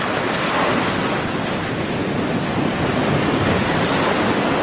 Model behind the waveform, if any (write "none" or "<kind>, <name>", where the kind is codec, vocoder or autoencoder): none